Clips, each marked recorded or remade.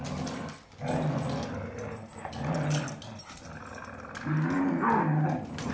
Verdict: recorded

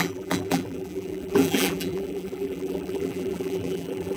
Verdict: remade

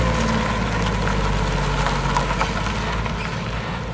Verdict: recorded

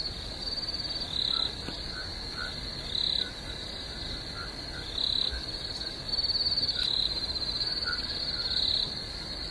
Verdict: recorded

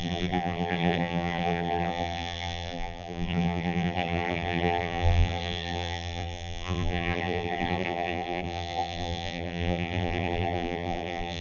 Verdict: remade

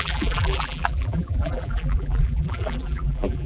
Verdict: remade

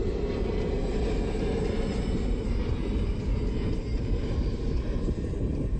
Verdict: remade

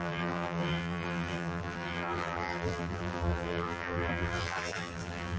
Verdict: remade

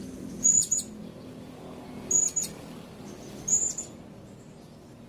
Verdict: recorded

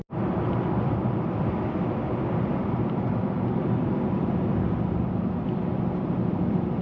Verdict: remade